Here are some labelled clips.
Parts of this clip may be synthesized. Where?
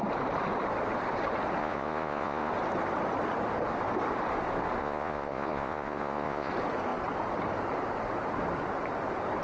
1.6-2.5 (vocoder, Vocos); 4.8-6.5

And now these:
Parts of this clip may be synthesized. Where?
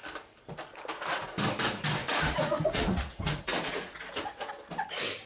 2.0-4.5 (vocoder, Vocos)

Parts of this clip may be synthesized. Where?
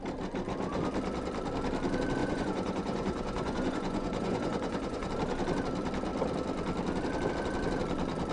2.2-5.1 (vocoder, Vocos)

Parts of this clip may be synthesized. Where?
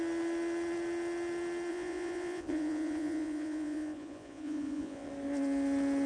1.7-5.1 (vocoder, Vocos)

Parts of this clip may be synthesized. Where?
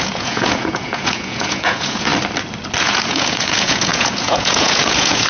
0.0-2.1 (vocoder, Vocos); 2.8-5.3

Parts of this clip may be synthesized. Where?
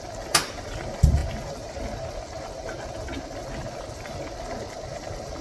none